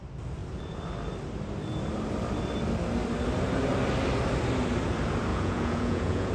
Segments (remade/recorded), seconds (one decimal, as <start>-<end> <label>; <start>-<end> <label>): 0.0-5.3 recorded; 5.3-6.3 remade